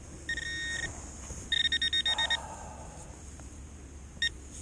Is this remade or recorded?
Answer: recorded